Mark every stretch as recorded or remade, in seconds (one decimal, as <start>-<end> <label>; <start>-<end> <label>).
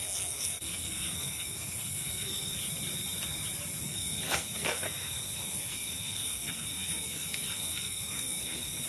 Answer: 0.0-2.6 remade; 2.6-3.8 recorded; 3.8-8.9 remade